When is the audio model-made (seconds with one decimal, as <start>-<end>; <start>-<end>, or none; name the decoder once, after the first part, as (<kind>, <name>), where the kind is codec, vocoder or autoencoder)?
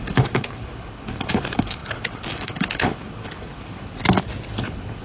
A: 0.0-4.0 (codec, HILCodec); 4.5-5.0